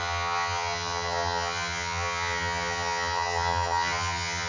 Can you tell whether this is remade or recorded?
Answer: remade